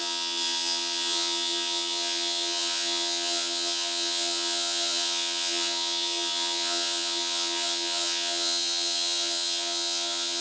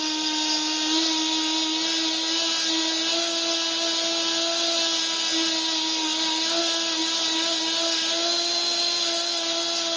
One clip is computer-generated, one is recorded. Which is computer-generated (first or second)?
first